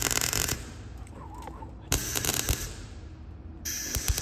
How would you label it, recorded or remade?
remade